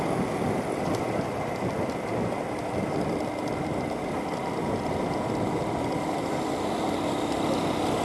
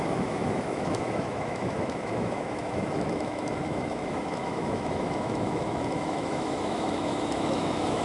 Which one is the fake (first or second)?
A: second